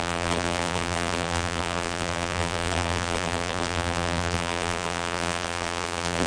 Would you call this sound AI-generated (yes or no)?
yes